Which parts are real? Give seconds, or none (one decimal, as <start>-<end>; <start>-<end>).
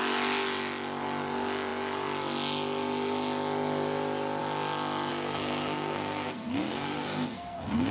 0.0-5.1